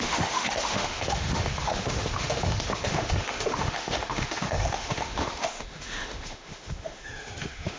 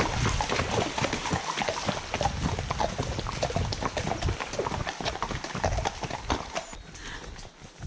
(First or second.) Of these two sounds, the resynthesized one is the first